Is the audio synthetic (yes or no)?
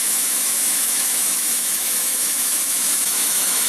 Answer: yes